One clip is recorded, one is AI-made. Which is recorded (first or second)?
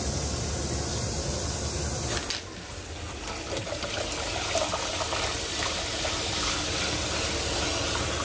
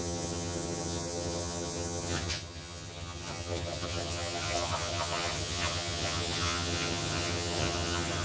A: first